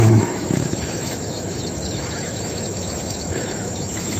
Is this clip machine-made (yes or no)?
yes